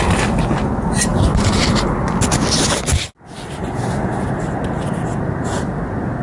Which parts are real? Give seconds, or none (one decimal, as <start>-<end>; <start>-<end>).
0.0-6.2